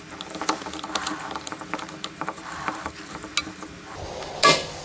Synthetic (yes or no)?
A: no